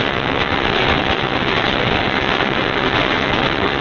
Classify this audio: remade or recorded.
remade